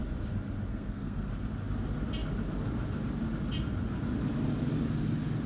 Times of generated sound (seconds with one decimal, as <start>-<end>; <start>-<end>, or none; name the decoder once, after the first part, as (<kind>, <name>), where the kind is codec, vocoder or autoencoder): 0.7-1.3 (codec, SNAC)

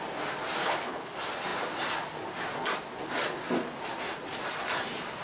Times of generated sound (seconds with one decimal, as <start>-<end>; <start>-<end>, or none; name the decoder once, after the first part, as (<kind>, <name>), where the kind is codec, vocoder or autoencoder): 0.6-1.1 (codec, HILCodec)

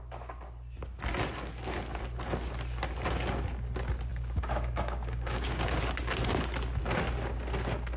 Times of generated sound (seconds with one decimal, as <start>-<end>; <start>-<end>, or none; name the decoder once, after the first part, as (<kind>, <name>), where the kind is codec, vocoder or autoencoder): 4.1-5.8 (codec, DAC)

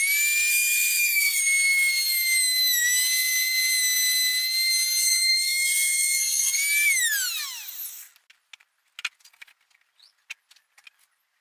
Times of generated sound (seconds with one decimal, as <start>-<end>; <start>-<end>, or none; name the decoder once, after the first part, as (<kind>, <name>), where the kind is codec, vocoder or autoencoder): 0.5-1.4 (codec, SNAC); 5.0-6.5

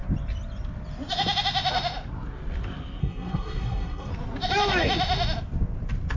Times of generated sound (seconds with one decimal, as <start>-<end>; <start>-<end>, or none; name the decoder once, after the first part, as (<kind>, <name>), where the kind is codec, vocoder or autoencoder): 3.0-4.1 (codec, SNAC)

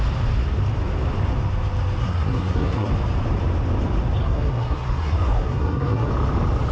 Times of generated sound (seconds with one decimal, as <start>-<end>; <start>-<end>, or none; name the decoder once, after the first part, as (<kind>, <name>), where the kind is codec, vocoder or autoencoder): 2.0-2.9 (codec, SNAC); 4.2-6.1